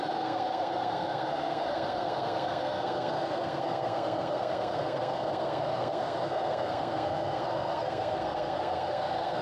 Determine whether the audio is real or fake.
fake